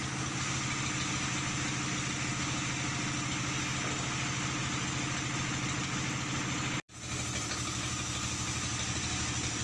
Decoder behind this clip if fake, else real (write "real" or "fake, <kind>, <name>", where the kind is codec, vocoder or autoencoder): real